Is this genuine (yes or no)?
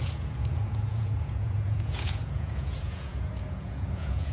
no